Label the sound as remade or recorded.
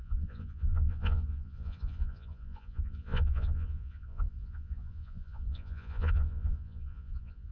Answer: remade